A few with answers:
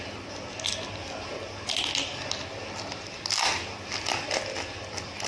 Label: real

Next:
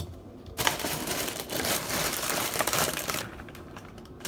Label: fake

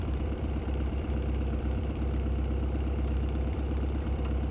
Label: fake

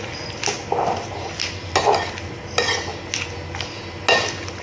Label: real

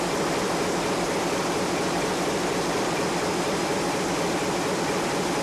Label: fake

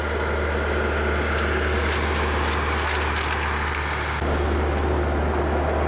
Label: real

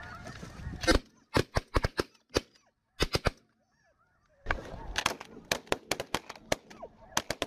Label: real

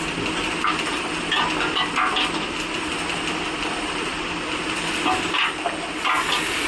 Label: real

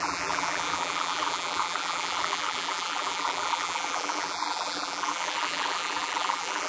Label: fake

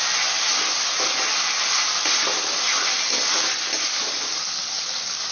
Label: real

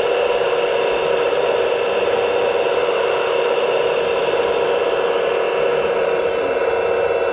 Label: real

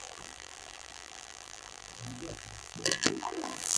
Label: fake